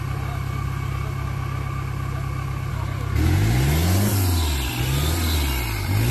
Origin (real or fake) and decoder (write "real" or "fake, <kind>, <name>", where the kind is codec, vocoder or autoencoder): real